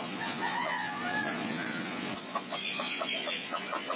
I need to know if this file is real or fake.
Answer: fake